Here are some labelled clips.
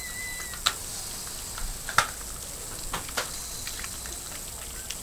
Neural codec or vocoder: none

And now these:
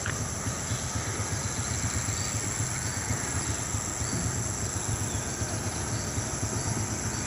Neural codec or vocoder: none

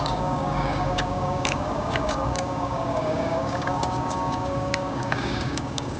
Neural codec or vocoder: codec, DAC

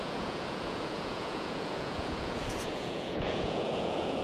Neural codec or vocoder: vocoder, Vocos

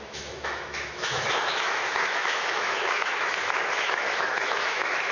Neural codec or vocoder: autoencoder, DAC-VAE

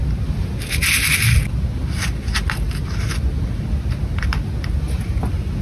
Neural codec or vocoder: none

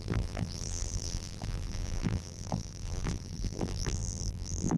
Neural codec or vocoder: vocoder, BigVGAN v2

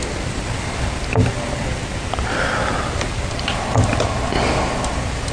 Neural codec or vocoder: none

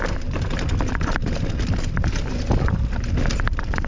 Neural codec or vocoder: none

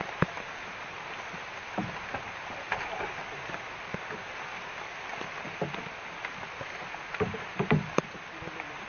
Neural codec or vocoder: none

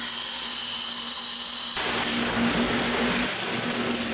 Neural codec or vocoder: none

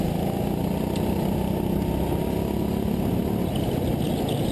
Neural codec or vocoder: none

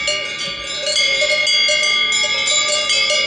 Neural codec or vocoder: none